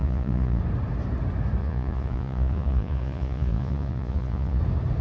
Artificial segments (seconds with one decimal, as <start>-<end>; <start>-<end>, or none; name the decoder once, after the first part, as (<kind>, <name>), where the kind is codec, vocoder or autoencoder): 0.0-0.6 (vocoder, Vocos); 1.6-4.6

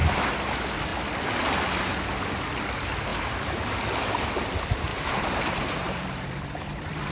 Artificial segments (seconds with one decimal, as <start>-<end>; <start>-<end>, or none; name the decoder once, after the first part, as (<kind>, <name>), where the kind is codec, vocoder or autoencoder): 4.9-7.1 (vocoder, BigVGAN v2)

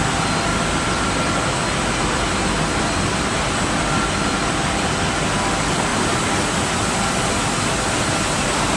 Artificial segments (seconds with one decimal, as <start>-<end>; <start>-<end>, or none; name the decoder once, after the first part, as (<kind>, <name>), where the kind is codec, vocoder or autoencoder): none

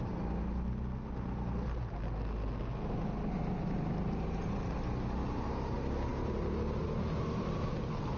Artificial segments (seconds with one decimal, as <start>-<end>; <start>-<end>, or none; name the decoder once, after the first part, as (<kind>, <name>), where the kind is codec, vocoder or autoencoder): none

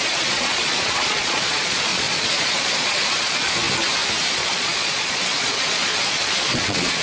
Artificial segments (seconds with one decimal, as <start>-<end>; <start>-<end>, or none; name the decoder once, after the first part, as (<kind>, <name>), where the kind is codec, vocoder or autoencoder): 0.0-3.6 (vocoder, Vocos); 4.2-7.0